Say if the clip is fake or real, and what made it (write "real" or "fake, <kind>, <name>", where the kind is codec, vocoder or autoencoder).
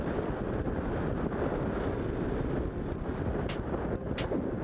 real